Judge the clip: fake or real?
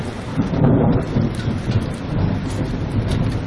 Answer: real